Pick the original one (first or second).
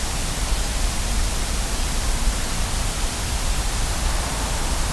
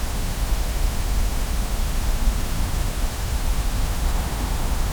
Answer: first